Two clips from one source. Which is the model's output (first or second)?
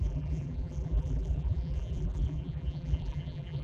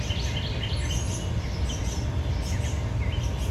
first